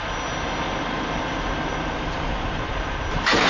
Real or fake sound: real